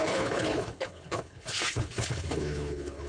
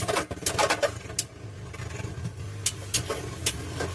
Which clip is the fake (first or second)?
first